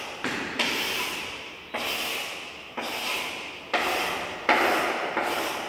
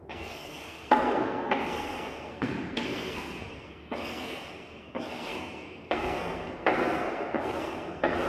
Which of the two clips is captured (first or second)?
first